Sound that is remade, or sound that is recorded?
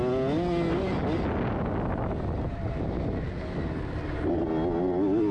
recorded